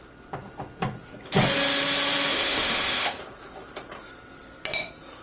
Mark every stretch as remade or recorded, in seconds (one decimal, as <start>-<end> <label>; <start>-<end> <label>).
0.0-2.3 recorded; 2.3-3.2 remade; 3.2-5.2 recorded